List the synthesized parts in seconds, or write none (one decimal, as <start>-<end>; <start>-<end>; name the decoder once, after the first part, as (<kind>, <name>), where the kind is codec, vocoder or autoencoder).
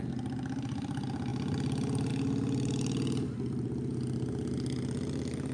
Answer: none